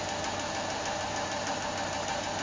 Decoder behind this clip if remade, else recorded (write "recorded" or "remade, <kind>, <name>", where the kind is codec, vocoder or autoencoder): recorded